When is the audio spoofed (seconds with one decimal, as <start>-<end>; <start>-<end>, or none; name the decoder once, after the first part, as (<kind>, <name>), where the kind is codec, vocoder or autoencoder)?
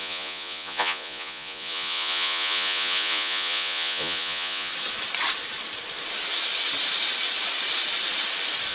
0.0-4.7 (vocoder, Vocos)